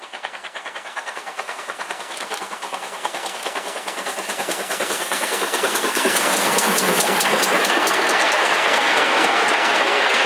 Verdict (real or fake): fake